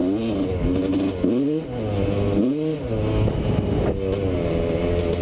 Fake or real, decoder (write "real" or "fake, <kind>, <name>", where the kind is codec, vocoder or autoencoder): real